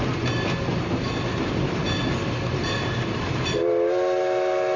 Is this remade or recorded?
recorded